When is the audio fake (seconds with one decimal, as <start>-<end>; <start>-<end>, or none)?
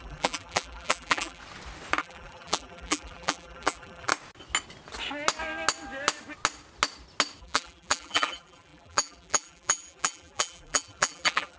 0.0-1.4; 2.0-4.1; 7.4-11.6